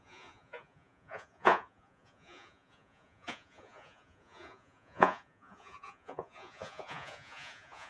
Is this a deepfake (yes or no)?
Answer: yes